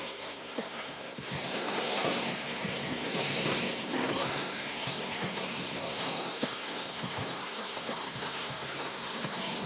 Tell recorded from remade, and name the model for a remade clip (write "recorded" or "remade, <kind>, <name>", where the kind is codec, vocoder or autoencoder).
remade, codec, SNAC